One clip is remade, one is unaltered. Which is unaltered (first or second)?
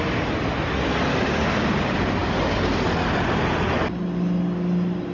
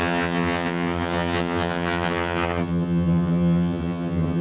first